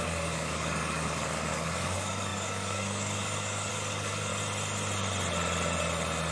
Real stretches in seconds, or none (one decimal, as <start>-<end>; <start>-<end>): 4.3-6.3